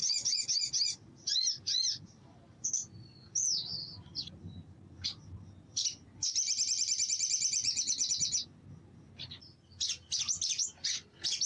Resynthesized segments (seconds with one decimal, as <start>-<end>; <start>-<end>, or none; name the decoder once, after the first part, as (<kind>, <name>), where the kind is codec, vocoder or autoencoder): 0.0-2.4 (vocoder, BigVGAN v2); 3.6-8.1